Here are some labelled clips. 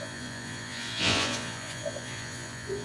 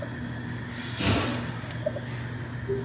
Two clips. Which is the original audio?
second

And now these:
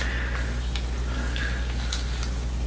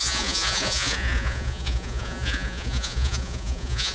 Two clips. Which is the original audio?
first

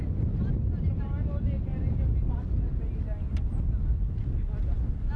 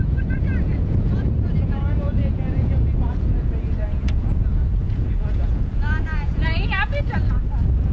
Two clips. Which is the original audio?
first